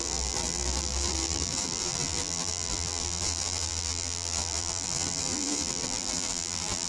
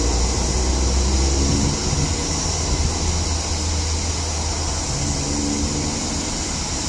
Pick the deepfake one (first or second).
first